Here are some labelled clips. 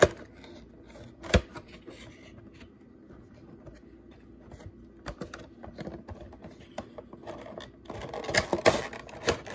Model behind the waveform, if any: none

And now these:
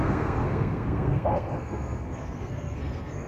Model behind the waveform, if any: codec, SNAC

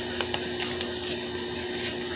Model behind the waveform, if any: none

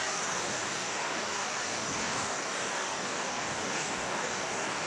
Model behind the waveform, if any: codec, DAC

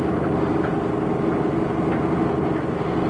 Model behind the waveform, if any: none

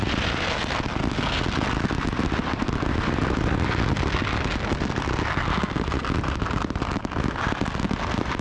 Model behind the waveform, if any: none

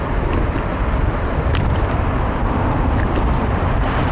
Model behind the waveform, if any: none